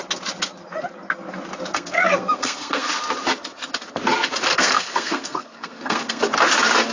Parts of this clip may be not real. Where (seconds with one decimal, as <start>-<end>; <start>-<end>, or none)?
1.7-2.9; 4.5-6.2

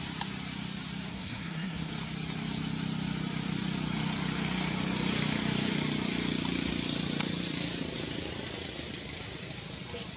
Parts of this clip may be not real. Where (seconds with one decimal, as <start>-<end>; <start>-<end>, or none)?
1.1-1.9

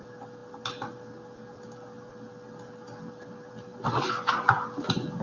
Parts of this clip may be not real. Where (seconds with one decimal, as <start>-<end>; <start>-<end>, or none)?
none

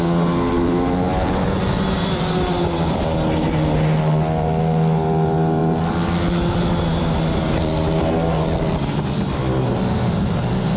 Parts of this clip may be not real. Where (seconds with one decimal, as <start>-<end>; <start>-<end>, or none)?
none

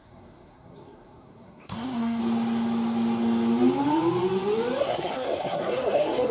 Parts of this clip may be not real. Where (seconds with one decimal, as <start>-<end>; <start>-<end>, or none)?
0.0-2.2; 4.8-6.3

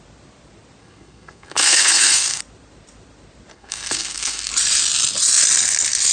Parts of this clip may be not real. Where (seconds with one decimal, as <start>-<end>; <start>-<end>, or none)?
0.8-2.4; 3.5-4.5

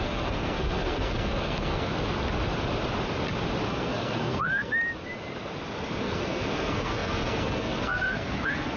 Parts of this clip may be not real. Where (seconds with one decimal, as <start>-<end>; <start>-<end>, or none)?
0.0-1.9; 3.7-4.8; 6.0-8.8